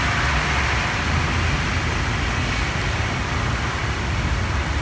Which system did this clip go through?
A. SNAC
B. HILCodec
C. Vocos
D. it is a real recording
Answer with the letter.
D